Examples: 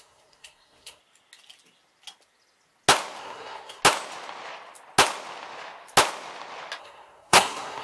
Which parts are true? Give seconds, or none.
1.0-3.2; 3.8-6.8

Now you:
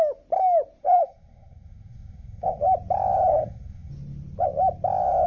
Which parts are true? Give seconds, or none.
0.0-0.8; 2.6-3.3; 3.9-5.3